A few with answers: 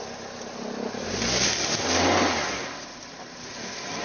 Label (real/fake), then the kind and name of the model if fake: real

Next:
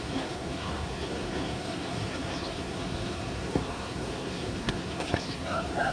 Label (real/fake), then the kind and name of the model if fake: fake, codec, SNAC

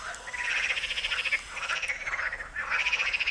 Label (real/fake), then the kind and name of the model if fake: real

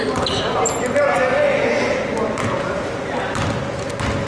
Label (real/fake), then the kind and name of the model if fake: real